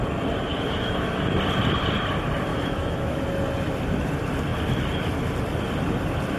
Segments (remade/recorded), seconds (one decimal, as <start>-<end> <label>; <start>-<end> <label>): 0.0-0.5 recorded; 0.5-1.3 remade; 1.3-2.5 recorded; 2.5-3.3 remade; 3.3-6.4 recorded